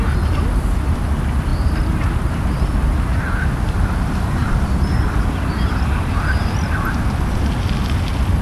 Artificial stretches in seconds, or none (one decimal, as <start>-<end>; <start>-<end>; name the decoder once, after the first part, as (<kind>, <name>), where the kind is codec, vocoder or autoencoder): 4.4-5.0 (vocoder, BigVGAN v2)